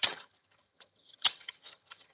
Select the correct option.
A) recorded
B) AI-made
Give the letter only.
B